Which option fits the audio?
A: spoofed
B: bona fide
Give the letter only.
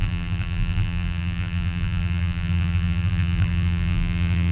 A